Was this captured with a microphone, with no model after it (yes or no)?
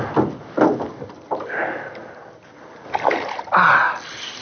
yes